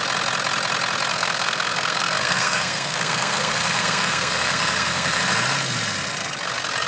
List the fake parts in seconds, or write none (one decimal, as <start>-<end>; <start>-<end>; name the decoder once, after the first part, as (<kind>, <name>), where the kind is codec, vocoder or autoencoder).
1.1-5.2 (codec, SNAC)